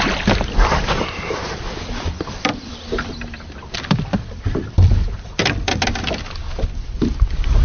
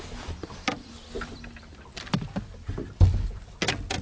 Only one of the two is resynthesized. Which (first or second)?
first